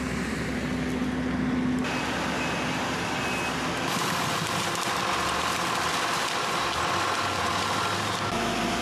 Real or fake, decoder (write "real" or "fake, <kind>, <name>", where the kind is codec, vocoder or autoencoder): real